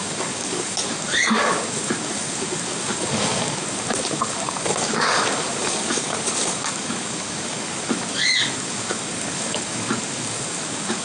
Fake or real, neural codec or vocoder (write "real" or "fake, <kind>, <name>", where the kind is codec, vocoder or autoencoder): fake, codec, DAC